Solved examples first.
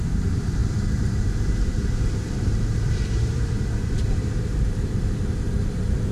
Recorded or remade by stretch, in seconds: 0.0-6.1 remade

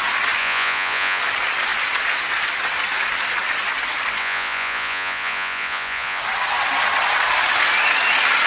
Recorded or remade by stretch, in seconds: 0.0-0.4 recorded; 0.4-1.2 remade; 1.2-4.2 recorded; 4.2-6.2 remade; 6.2-8.5 recorded

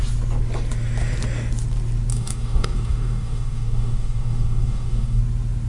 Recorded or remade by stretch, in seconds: 0.0-2.1 recorded; 2.1-5.2 remade; 5.2-5.7 recorded

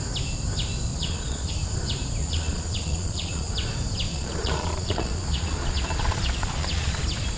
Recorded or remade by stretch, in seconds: 0.0-0.9 recorded; 0.9-1.5 remade; 1.5-2.2 recorded; 2.2-3.5 remade; 3.5-4.1 recorded; 4.1-7.0 remade; 7.0-7.4 recorded

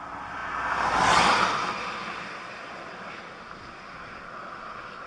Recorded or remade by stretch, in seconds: 0.0-5.1 recorded

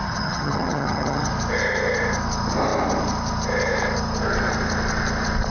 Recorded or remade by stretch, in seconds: 0.0-1.3 remade; 1.3-5.5 recorded

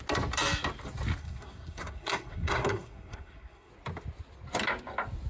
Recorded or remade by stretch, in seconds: 0.0-1.2 recorded; 1.2-3.7 remade; 3.7-5.3 recorded